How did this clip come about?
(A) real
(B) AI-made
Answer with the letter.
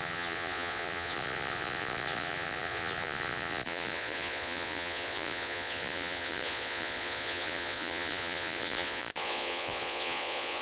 B